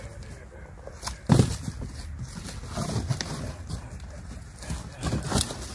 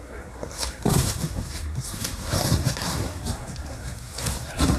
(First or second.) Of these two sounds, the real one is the first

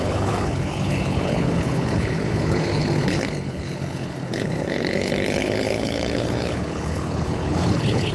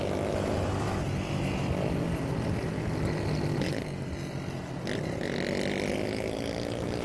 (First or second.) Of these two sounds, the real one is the second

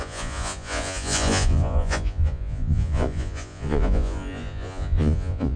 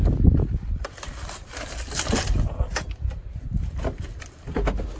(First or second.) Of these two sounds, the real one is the second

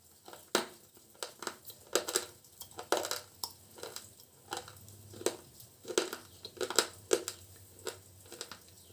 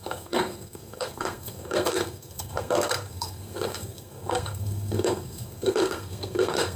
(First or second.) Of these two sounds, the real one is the first